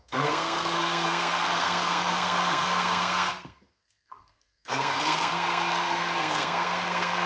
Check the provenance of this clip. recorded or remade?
remade